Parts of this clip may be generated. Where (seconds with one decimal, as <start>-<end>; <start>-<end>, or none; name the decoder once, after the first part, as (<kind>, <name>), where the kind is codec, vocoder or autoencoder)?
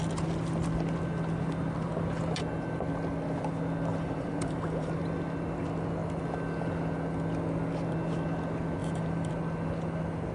3.9-4.9 (vocoder, BigVGAN v2); 8.8-9.3